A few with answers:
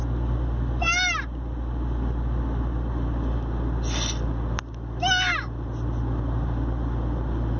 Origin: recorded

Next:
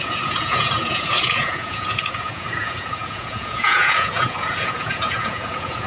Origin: remade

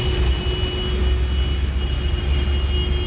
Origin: recorded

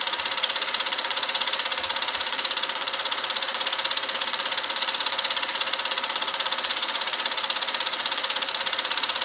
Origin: remade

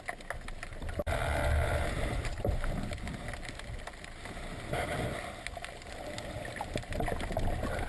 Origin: recorded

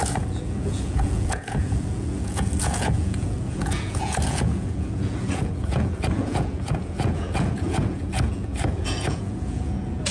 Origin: remade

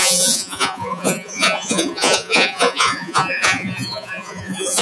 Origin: remade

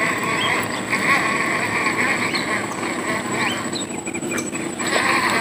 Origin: recorded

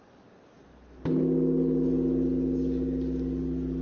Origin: recorded